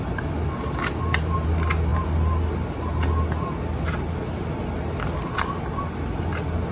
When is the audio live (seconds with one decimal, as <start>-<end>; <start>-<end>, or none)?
0.0-6.7

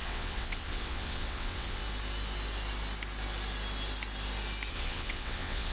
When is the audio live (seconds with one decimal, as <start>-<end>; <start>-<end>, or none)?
1.8-4.7

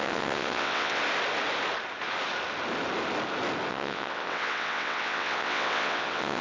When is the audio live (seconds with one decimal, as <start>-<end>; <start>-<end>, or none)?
1.0-3.7

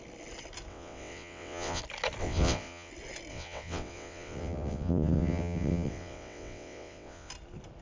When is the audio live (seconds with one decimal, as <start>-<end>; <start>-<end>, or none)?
0.0-0.7; 1.8-2.2; 2.9-3.3; 7.3-7.8